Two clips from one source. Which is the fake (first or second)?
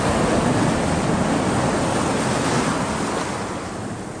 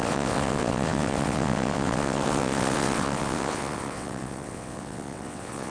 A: second